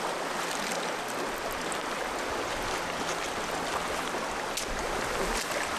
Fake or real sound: real